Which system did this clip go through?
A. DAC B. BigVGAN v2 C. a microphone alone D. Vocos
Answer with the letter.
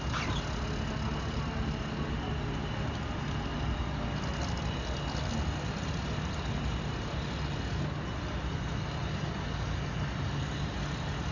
C